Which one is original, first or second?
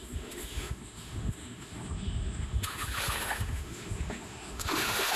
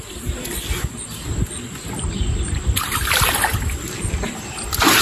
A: second